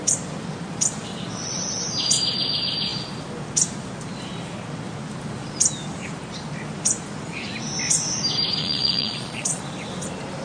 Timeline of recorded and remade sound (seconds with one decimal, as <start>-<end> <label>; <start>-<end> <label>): 0.0-8.6 recorded; 8.6-9.6 remade; 9.6-10.4 recorded

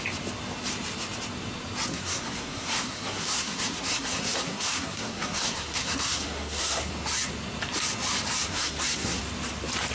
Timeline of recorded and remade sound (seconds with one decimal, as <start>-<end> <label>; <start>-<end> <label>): 0.0-1.9 recorded; 1.9-6.9 remade; 6.9-8.5 recorded; 8.5-9.2 remade; 9.2-9.9 recorded

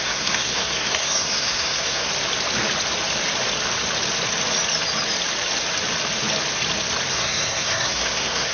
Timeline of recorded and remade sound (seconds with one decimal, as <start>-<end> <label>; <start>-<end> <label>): 0.0-2.1 remade; 2.1-7.1 recorded; 7.1-8.5 remade

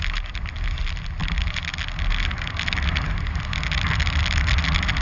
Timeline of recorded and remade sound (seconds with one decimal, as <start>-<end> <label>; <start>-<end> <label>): 0.0-5.0 recorded

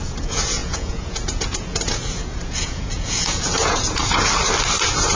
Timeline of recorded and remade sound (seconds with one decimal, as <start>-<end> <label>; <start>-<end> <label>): 0.0-4.0 remade; 4.0-5.1 recorded

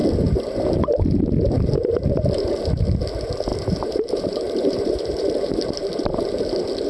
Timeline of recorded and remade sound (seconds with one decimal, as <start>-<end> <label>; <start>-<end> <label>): 0.0-3.5 recorded; 3.5-5.3 remade; 5.3-6.9 recorded

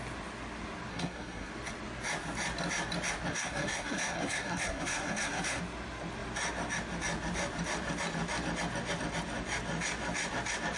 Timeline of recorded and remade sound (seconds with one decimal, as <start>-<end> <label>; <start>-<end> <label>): 0.0-0.9 recorded; 0.9-1.5 remade; 1.5-3.3 recorded; 3.3-5.6 remade; 5.6-10.8 recorded